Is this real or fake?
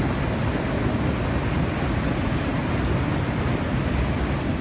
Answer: real